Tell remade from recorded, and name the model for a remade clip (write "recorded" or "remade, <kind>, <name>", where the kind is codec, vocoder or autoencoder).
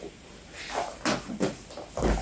recorded